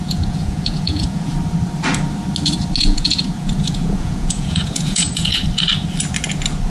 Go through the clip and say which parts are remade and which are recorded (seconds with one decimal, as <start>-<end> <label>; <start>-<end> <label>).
0.0-1.3 remade; 1.3-2.8 recorded; 2.8-5.4 remade; 5.4-6.7 recorded